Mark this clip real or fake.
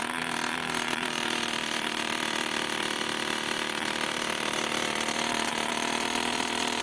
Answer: fake